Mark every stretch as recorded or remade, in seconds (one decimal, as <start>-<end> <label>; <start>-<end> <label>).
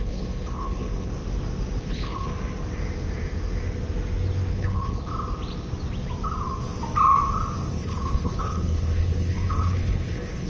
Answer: 0.0-1.1 remade; 1.1-1.8 recorded; 1.8-2.3 remade; 2.3-4.5 recorded; 4.5-5.1 remade; 5.1-7.7 recorded; 7.7-10.5 remade